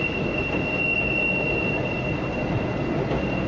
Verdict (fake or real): real